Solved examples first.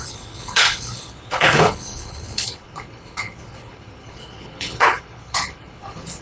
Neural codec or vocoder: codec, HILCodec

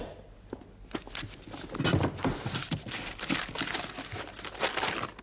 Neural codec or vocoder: none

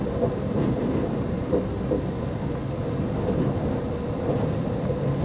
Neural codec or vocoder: none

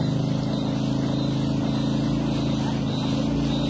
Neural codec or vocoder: none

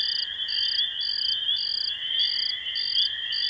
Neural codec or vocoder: none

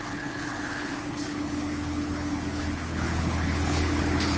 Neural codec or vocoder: codec, HILCodec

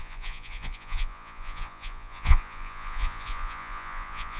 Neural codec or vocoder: vocoder, Vocos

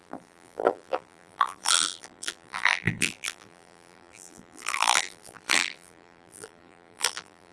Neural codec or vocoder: vocoder, BigVGAN v2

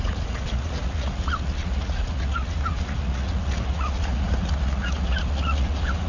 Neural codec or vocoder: vocoder, Vocos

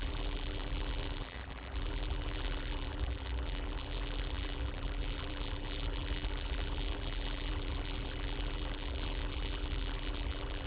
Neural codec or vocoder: vocoder, BigVGAN v2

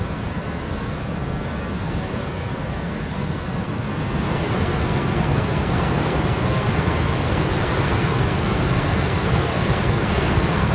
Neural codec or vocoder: codec, SNAC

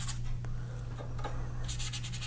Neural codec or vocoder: none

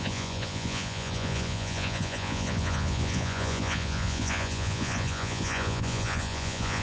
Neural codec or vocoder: vocoder, Vocos